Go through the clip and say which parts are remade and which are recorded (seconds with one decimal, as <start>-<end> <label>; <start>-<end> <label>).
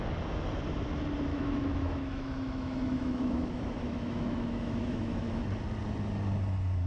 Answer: 0.0-1.3 recorded; 1.3-5.4 remade; 5.4-6.9 recorded